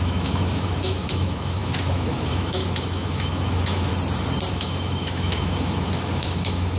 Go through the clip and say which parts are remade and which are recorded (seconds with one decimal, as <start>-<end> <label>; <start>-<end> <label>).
0.0-3.9 remade; 3.9-4.5 recorded; 4.5-6.8 remade